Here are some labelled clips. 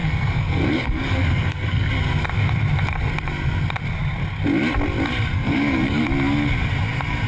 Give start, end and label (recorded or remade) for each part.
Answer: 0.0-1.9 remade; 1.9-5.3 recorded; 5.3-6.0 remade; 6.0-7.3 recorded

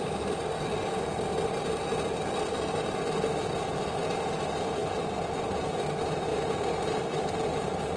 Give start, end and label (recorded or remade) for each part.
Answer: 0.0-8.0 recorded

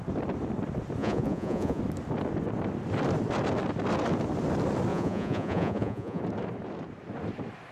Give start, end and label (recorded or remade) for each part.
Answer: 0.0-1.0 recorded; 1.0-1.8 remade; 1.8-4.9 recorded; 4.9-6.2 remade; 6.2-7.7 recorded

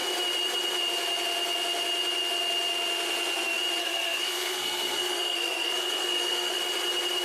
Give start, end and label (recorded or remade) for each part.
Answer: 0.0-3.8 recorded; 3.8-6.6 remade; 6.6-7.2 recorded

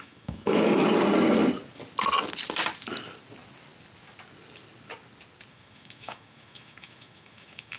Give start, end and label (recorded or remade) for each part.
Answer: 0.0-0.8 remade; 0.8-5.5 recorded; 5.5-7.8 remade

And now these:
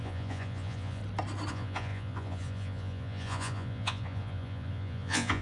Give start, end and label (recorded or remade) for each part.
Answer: 0.0-1.0 remade; 1.0-1.5 recorded; 1.5-5.4 remade

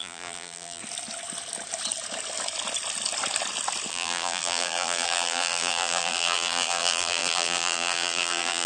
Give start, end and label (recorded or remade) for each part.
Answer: 0.0-0.8 remade; 0.8-3.9 recorded; 3.9-8.7 remade

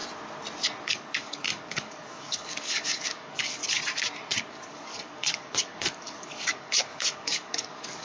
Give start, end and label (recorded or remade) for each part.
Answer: 0.0-0.9 recorded; 0.9-3.6 remade; 3.6-4.4 recorded; 4.4-8.0 remade